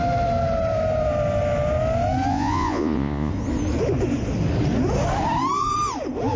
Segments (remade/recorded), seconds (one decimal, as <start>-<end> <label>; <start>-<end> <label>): 0.0-2.3 recorded; 2.3-3.3 remade; 3.3-6.4 recorded